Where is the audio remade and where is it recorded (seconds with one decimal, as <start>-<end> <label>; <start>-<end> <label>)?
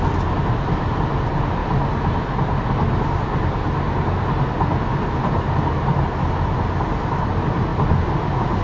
0.0-8.6 recorded